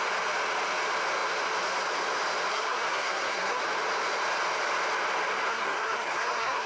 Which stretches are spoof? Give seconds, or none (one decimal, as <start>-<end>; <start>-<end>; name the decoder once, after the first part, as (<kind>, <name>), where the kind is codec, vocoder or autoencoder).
2.5-3.6 (codec, SNAC); 5.5-6.7